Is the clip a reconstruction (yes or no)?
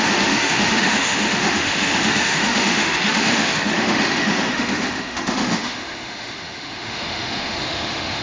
yes